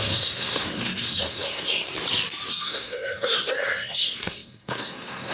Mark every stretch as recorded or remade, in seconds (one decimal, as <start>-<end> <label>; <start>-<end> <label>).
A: 0.0-1.9 remade; 1.9-2.5 recorded; 2.5-5.3 remade